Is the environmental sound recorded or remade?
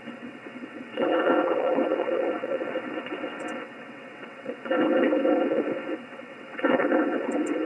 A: remade